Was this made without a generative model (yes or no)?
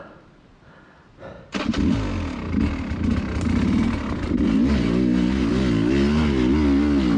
yes